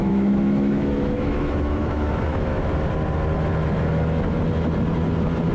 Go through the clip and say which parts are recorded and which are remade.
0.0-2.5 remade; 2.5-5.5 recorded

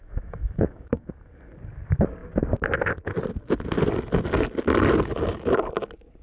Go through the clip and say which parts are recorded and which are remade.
0.0-1.1 remade; 1.1-6.2 recorded

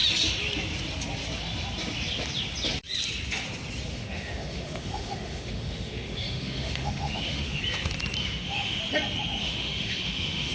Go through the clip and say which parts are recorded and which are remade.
0.0-3.9 recorded; 3.9-7.6 remade; 7.6-8.2 recorded; 8.2-8.8 remade; 8.8-9.4 recorded; 9.4-10.5 remade

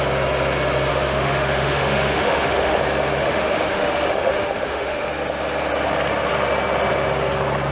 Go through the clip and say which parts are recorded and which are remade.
0.0-0.9 recorded; 0.9-2.8 remade; 2.8-3.2 recorded; 3.2-5.1 remade; 5.1-7.7 recorded

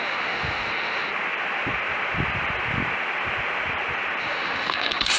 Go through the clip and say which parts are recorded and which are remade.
0.0-1.1 remade; 1.1-4.2 recorded; 4.2-5.2 remade

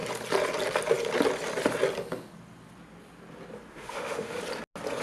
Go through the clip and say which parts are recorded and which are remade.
0.0-3.7 recorded; 3.7-4.4 remade; 4.4-5.0 recorded